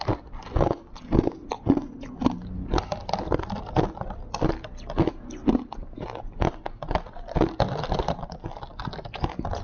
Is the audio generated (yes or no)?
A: no